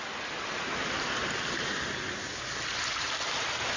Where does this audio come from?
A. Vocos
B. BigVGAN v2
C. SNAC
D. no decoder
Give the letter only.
D